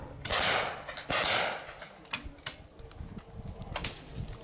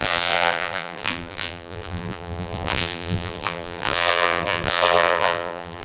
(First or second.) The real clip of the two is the first